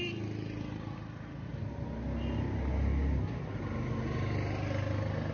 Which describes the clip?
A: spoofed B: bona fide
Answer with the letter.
B